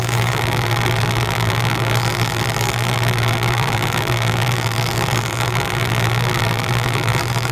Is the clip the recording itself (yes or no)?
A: no